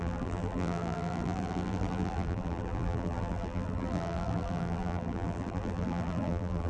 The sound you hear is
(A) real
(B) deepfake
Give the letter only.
B